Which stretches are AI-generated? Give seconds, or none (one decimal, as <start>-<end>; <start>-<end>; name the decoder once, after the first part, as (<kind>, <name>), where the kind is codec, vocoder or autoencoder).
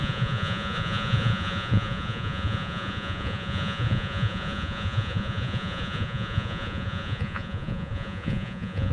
0.0-8.9 (vocoder, Vocos)